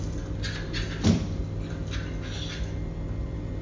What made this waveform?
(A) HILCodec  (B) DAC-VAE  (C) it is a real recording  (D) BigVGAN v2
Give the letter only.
C